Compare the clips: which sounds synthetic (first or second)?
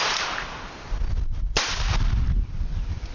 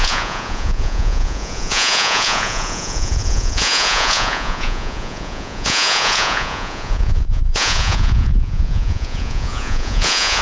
second